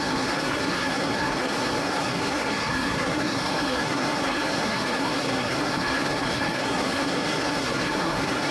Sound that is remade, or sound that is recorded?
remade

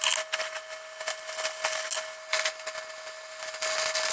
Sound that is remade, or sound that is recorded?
recorded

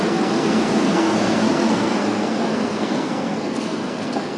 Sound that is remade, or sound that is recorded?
remade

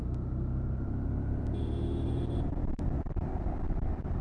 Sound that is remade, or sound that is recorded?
recorded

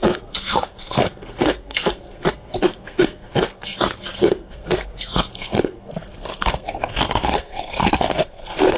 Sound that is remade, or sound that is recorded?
remade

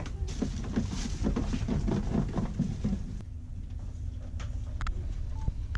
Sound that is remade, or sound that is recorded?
recorded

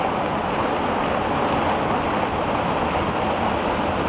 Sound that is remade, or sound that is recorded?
recorded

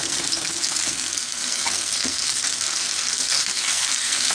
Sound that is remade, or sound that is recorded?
remade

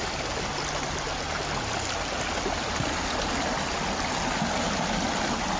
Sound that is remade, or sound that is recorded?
recorded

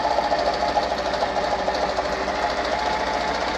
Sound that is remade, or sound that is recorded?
recorded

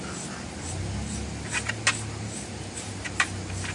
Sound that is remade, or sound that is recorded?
recorded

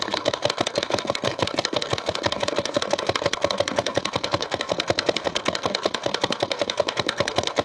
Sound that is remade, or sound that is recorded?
remade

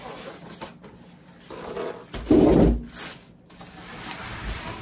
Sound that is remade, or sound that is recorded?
recorded